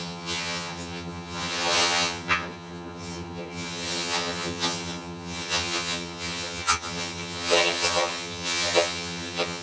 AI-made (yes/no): yes